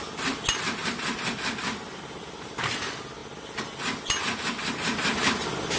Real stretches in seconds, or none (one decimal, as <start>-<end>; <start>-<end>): 0.0-5.8